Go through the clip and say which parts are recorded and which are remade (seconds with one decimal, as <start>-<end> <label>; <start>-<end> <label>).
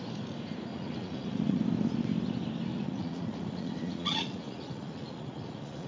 0.0-0.7 recorded; 0.7-1.6 remade; 1.6-2.7 recorded; 2.7-5.9 remade